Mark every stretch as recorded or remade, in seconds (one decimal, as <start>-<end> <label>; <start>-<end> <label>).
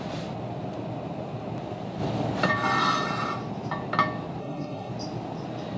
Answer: 0.0-4.4 recorded; 4.4-4.9 remade; 4.9-5.8 recorded